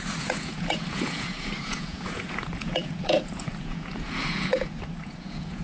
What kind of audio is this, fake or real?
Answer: fake